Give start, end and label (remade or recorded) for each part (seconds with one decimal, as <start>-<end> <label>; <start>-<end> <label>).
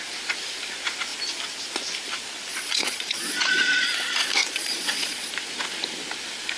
0.0-2.5 recorded; 2.5-5.3 remade; 5.3-6.6 recorded